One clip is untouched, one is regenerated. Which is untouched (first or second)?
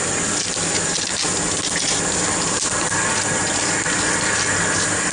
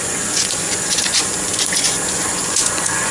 first